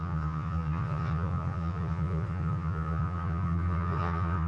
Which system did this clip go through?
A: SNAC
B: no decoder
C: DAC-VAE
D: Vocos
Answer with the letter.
D